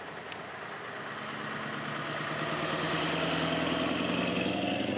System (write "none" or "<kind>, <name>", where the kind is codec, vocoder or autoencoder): none